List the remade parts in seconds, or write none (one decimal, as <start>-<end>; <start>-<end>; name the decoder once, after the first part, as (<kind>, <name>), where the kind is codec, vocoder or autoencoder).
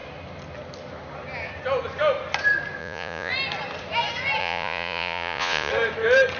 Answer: 2.8-3.3 (vocoder, Vocos); 4.4-5.7